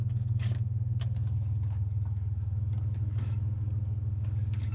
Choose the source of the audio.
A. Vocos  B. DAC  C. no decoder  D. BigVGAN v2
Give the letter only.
B